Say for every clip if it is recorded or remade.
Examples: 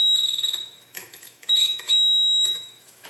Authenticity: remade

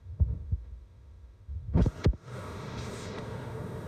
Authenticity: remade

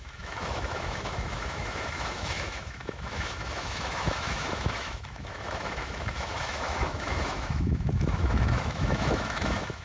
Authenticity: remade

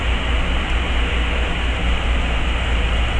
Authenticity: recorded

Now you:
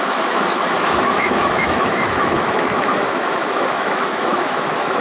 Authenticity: remade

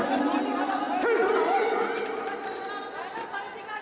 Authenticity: recorded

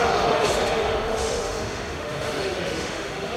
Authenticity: remade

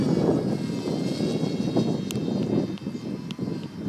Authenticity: recorded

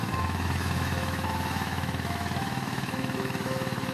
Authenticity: remade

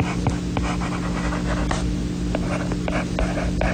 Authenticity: recorded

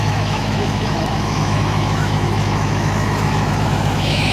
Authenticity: remade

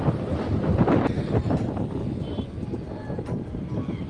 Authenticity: recorded